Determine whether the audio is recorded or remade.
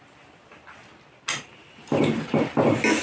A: recorded